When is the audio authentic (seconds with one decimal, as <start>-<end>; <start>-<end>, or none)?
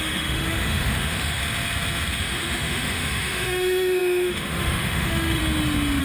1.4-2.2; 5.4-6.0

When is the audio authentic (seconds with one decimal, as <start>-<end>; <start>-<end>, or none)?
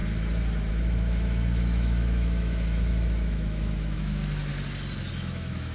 0.0-0.7; 4.5-5.1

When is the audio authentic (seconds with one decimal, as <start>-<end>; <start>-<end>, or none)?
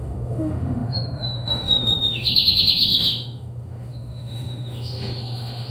none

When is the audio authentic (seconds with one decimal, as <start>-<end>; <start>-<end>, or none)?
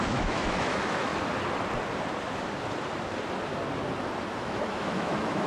1.1-4.4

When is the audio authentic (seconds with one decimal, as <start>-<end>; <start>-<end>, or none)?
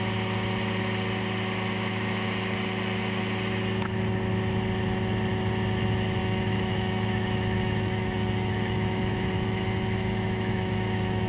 0.0-6.2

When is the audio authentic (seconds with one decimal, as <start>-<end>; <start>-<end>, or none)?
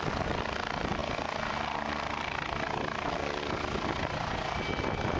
0.0-5.2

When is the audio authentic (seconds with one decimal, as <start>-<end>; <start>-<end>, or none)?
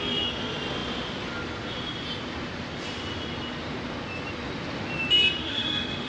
0.0-5.4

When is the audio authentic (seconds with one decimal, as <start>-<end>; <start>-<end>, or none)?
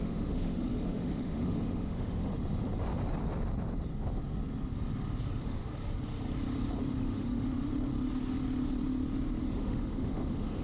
2.3-5.3; 5.7-6.8; 7.7-9.4